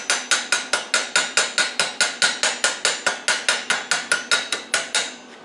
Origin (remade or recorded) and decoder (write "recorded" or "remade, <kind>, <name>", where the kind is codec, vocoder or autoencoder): recorded